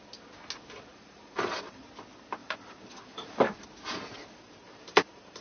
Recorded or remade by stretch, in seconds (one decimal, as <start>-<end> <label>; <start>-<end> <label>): 0.0-0.9 recorded; 0.9-1.9 remade; 1.9-2.4 recorded; 2.4-3.6 remade; 3.6-4.2 recorded; 4.2-5.4 remade